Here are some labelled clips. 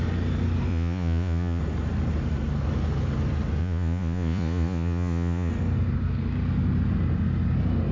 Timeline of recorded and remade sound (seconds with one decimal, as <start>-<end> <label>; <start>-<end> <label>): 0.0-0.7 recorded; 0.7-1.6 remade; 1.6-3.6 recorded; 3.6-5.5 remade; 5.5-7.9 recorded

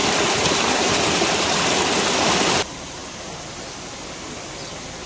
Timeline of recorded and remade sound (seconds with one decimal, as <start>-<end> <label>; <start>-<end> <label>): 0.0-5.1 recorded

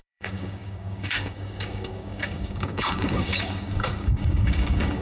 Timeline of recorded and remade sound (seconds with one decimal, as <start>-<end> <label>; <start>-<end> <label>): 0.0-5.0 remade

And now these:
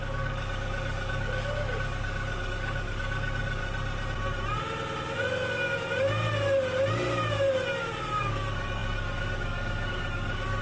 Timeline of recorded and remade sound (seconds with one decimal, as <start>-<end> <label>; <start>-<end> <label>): 0.0-3.6 remade; 3.6-8.2 recorded; 8.2-10.6 remade

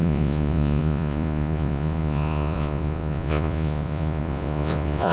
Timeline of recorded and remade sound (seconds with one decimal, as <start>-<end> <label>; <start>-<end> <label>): 0.0-5.1 remade

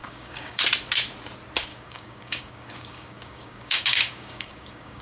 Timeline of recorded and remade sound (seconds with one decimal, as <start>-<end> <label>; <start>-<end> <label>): 0.0-0.6 remade; 0.6-1.7 recorded; 1.7-5.0 remade